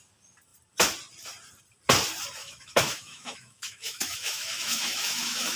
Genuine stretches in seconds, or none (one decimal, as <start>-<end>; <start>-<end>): 0.0-2.4